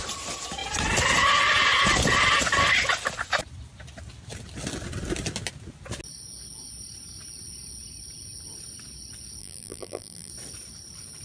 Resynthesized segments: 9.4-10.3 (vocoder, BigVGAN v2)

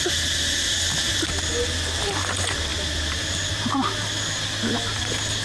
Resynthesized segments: none

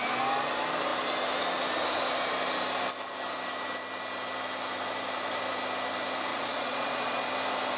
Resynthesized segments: 6.3-7.3 (vocoder, Vocos)